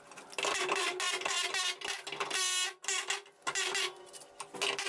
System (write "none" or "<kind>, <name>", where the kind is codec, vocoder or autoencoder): none